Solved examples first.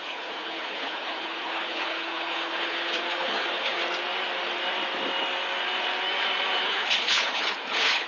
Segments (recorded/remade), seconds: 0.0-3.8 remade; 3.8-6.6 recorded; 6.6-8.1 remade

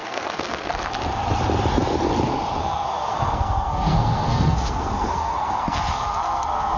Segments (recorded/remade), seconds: 0.0-0.7 remade; 0.7-2.6 recorded; 2.6-6.8 remade

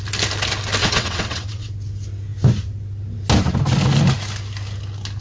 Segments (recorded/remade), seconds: 0.0-0.8 recorded; 0.8-1.7 remade; 1.7-5.2 recorded

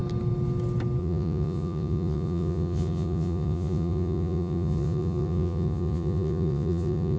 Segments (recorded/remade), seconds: 0.0-1.0 recorded; 1.0-7.2 remade

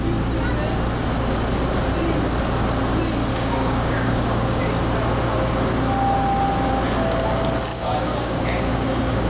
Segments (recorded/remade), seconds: 0.0-3.3 recorded; 3.3-4.6 remade; 4.6-7.7 recorded; 7.7-9.3 remade